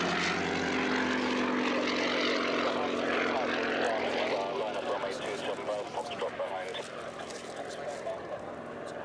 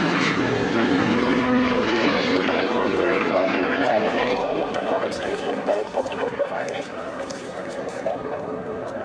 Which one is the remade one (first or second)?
second